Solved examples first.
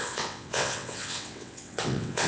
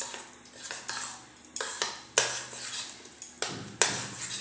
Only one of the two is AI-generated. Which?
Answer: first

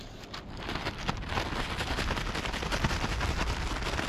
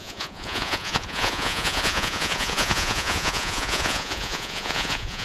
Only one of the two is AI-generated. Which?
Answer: second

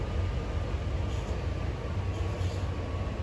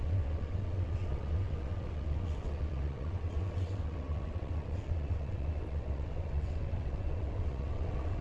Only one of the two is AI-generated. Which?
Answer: second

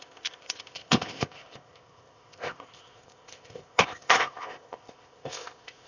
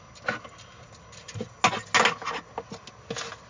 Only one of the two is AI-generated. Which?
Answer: first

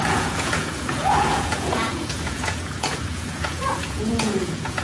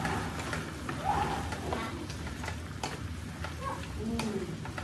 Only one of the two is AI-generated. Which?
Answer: first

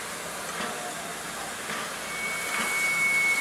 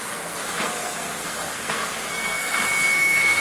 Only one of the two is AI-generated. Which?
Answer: second